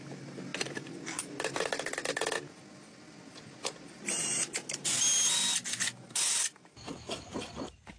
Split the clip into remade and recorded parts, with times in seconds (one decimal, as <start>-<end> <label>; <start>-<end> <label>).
0.0-8.0 recorded